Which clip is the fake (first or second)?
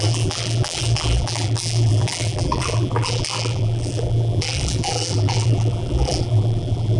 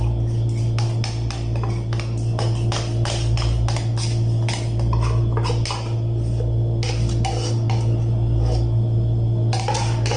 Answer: first